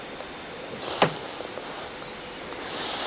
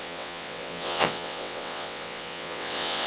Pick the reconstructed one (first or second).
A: second